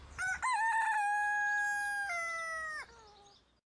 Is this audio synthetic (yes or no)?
no